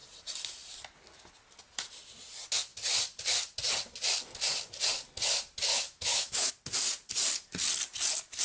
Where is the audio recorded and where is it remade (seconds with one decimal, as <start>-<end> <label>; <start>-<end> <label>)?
0.0-5.7 recorded; 5.7-6.5 remade; 6.5-8.4 recorded